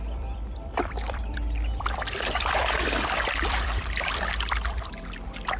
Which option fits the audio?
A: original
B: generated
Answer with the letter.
B